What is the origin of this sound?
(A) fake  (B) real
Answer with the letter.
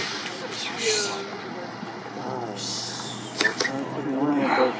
B